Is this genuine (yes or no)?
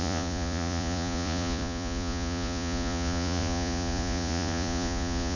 no